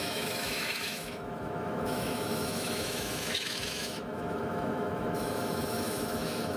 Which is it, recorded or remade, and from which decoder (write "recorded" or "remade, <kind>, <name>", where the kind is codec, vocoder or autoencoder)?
remade, autoencoder, DAC-VAE